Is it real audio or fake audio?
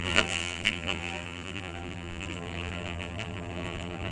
fake